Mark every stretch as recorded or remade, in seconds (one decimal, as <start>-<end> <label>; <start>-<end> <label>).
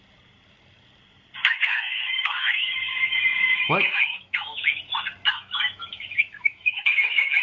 0.0-1.5 recorded; 1.5-4.8 remade; 4.8-5.3 recorded; 5.3-7.4 remade